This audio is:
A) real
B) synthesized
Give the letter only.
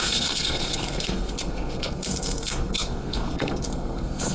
B